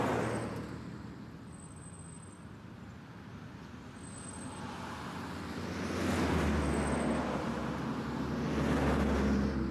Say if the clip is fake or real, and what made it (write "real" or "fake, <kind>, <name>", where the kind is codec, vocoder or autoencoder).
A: real